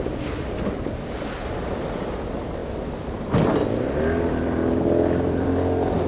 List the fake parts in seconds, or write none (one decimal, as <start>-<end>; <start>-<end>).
none